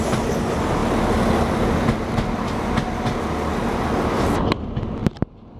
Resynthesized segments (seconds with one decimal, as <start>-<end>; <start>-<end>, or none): none